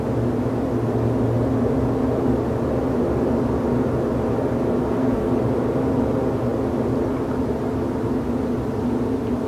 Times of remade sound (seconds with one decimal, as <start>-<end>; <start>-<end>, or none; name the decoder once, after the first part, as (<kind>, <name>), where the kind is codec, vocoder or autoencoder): 4.8-5.3 (codec, SNAC)